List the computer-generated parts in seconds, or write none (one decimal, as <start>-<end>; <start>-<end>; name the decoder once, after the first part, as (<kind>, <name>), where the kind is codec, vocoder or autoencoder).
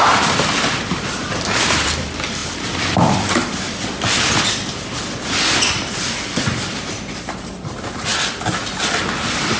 0.0-8.1 (vocoder, BigVGAN v2); 8.8-9.6